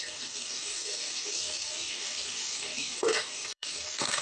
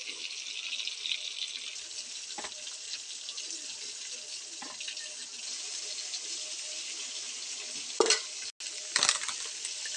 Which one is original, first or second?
second